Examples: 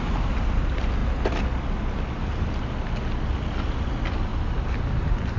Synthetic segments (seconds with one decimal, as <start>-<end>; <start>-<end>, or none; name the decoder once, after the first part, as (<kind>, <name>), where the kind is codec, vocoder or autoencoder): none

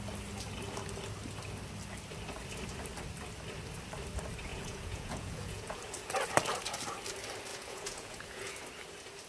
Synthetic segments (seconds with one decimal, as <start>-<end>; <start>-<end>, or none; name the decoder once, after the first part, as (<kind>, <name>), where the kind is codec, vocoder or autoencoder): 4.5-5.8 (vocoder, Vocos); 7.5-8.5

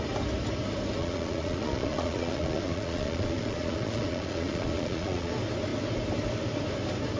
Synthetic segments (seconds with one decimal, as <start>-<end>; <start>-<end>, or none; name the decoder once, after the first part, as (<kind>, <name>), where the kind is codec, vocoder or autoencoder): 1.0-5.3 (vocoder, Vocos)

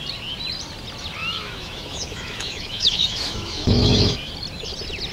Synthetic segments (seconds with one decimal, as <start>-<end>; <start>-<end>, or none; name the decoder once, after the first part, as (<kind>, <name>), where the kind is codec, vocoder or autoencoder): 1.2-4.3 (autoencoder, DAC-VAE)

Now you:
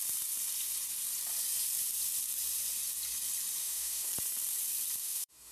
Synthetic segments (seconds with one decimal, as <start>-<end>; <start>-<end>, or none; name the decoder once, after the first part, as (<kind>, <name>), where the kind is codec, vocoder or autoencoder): 3.6-4.1 (autoencoder, DAC-VAE); 5.0-5.5

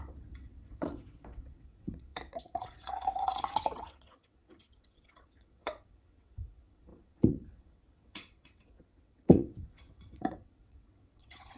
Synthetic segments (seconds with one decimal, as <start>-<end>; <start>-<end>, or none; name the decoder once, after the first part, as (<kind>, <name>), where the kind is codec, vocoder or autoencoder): 0.0-11.6 (vocoder, WaveNeXt)

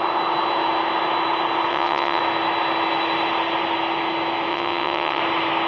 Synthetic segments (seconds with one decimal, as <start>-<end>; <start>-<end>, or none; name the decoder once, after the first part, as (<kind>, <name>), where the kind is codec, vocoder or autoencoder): 1.7-2.2 (vocoder, WaveNeXt); 4.5-5.2

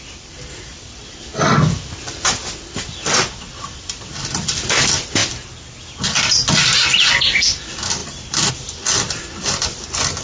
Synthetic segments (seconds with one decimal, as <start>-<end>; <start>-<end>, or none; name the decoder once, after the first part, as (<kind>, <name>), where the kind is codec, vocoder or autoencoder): 0.0-1.3 (vocoder, BigVGAN v2); 3.3-5.2; 7.6-10.2